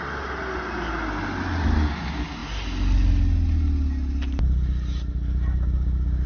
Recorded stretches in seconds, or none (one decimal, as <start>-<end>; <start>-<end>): 0.0-6.3